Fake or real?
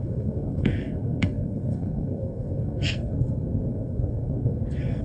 fake